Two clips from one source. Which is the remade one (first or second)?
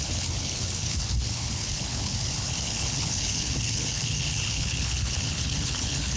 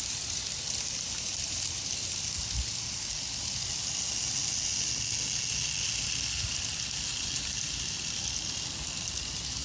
first